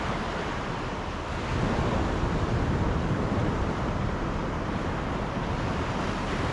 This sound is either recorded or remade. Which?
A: remade